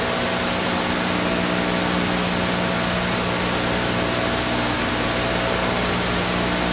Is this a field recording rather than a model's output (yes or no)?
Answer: yes